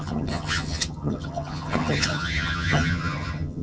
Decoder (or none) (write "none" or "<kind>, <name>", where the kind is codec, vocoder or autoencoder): vocoder, HiFi-GAN